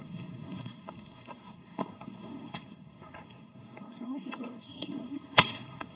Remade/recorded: remade